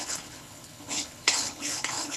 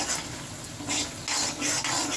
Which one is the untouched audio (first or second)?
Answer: second